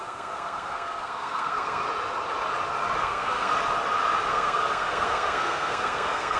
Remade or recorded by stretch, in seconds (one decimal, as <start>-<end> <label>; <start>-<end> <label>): 0.0-1.8 remade; 1.8-3.0 recorded; 3.0-3.5 remade; 3.5-4.3 recorded; 4.3-6.4 remade